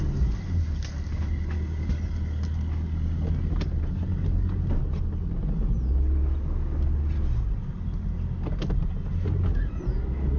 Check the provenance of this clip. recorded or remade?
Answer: recorded